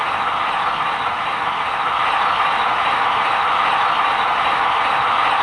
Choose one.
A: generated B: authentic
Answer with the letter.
B